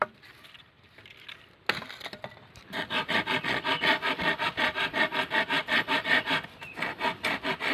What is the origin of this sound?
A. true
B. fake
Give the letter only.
A